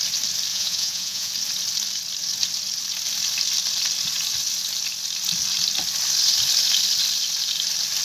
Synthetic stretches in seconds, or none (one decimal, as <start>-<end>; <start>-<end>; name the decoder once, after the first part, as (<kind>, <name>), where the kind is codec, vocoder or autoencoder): 0.5-1.3 (vocoder, Vocos)